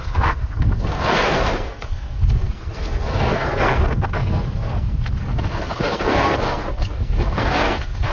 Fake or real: fake